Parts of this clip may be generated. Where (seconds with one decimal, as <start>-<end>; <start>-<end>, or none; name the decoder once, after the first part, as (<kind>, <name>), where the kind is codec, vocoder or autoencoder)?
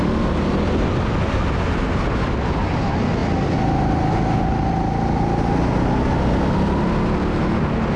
none